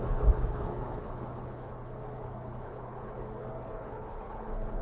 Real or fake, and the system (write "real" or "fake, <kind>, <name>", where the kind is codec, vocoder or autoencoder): fake, codec, HILCodec